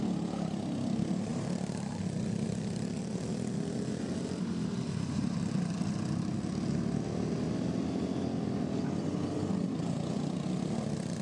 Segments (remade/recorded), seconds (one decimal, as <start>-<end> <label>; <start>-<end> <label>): 0.0-1.3 recorded; 1.3-2.0 remade; 2.0-11.2 recorded